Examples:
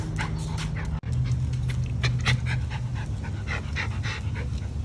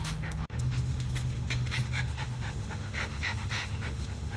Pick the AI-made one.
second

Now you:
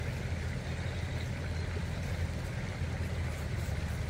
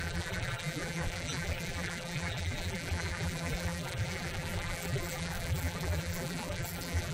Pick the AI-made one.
second